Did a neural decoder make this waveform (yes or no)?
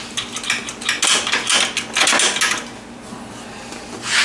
no